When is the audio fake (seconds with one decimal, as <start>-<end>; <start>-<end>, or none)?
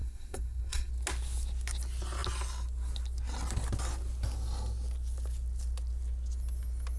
0.0-0.9